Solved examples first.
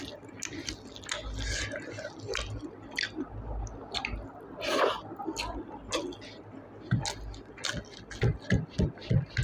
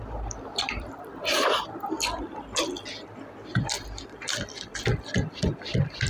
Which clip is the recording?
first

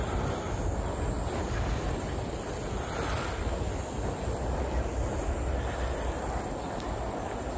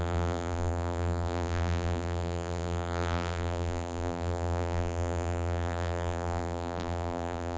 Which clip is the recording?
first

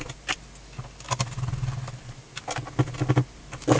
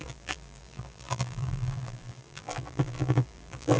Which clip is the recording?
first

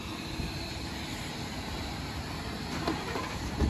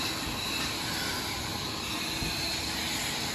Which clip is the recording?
second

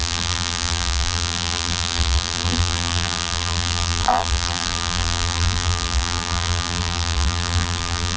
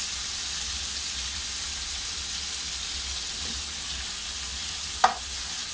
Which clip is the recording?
second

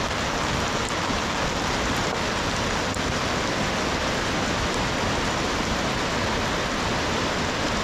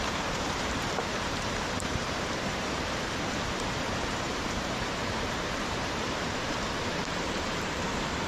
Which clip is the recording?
first